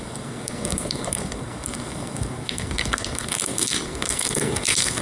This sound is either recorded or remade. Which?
remade